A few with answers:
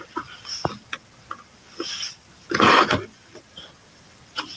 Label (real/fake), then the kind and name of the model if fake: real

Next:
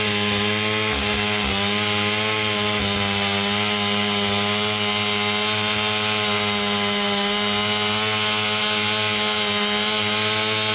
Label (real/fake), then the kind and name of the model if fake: real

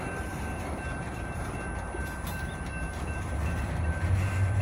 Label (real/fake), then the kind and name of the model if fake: fake, vocoder, BigVGAN v2